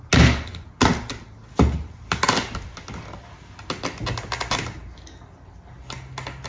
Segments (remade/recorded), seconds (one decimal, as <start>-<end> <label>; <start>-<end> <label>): 0.0-6.5 recorded